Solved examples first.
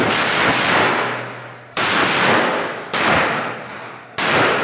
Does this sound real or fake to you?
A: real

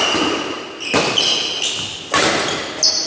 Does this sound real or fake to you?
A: real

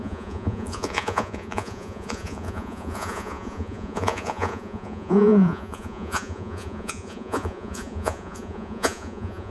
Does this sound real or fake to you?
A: fake